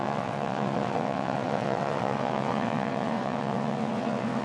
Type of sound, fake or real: fake